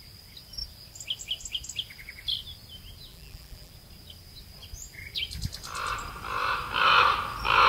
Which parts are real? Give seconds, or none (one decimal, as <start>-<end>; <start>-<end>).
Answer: 0.0-3.1; 3.7-7.7